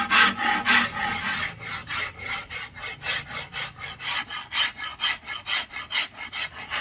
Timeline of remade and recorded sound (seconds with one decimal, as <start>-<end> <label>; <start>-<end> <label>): 0.0-1.8 recorded; 1.8-2.5 remade; 2.5-6.8 recorded